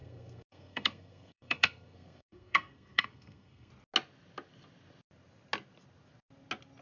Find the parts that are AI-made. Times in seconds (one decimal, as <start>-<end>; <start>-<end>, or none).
0.0-3.7